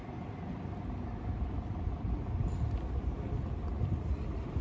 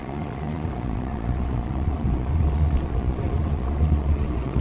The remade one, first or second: second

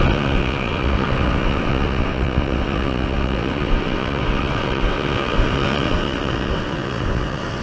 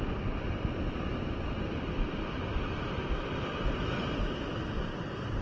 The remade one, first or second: first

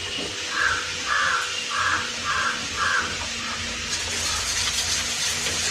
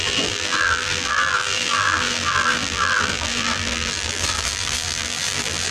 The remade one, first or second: second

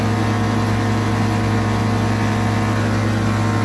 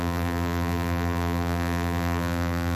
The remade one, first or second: second